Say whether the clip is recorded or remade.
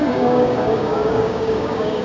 remade